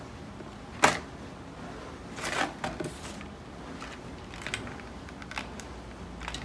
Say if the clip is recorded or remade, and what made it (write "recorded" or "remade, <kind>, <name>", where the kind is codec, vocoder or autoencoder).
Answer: recorded